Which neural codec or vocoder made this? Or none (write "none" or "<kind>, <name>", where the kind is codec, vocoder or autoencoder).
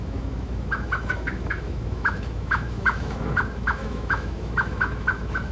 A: autoencoder, DAC-VAE